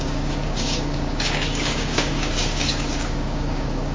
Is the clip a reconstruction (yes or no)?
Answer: yes